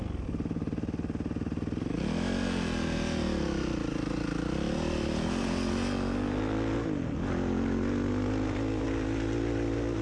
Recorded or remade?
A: recorded